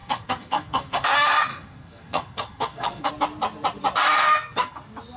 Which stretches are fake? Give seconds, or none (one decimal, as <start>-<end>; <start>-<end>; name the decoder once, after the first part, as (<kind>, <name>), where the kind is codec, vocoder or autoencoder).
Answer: 0.0-1.1 (codec, SNAC); 1.5-3.1; 4.2-4.8